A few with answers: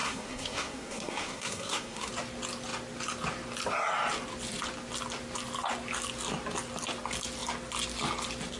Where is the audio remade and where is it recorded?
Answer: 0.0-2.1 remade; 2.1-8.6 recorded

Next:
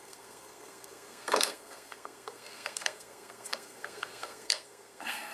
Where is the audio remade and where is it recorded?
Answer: 0.0-5.3 remade

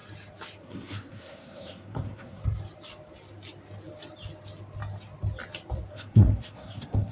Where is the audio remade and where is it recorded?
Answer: 0.0-0.6 recorded; 0.6-2.4 remade; 2.4-5.9 recorded; 5.9-7.1 remade

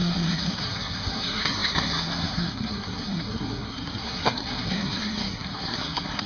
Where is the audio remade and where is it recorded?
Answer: 0.0-6.3 remade